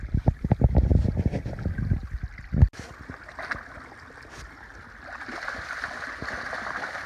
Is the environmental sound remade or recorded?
recorded